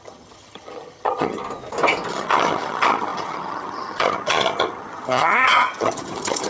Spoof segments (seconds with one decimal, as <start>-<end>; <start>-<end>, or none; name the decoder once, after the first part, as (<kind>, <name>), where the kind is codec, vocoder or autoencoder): 0.0-1.4 (vocoder, HiFi-GAN); 2.1-6.5